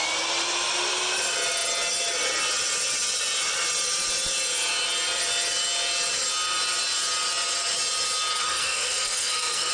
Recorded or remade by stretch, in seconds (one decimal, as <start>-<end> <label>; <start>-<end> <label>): 0.0-8.4 recorded; 8.4-9.7 remade